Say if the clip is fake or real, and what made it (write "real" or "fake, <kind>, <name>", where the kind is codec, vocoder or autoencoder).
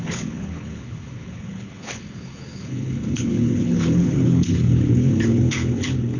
fake, codec, HILCodec